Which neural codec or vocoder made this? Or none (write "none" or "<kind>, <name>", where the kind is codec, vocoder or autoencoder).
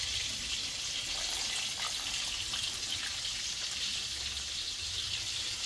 none